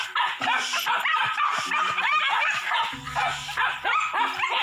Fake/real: real